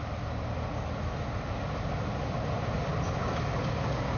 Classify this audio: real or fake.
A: real